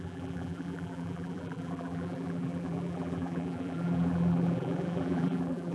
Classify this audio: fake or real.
fake